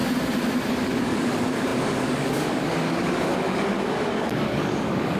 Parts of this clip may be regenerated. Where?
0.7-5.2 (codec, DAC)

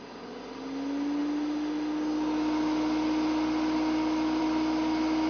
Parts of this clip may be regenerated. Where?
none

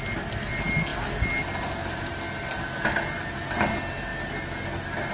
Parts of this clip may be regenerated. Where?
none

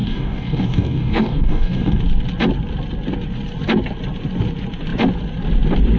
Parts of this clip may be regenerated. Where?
0.0-2.0 (codec, DAC)